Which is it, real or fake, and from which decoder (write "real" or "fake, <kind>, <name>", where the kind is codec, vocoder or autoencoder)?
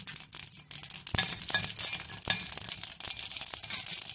real